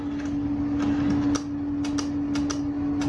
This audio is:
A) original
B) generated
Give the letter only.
A